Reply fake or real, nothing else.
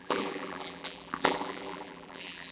fake